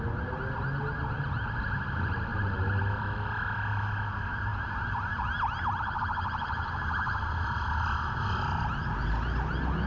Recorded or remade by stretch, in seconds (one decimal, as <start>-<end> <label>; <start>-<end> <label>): 0.0-9.9 recorded